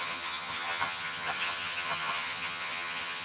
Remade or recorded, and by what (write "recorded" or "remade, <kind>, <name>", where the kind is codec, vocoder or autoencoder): remade, vocoder, HiFi-GAN